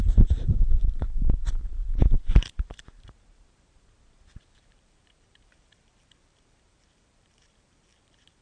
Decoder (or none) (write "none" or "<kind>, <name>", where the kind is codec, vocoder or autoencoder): vocoder, BigVGAN v2